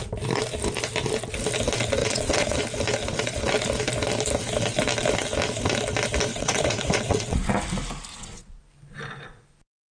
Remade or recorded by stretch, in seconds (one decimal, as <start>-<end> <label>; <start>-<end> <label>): 0.0-2.0 recorded; 2.0-2.6 remade; 2.6-6.3 recorded; 6.3-7.5 remade; 7.5-8.1 recorded; 8.1-8.6 remade; 8.6-9.9 recorded